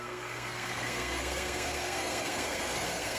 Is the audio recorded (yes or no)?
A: no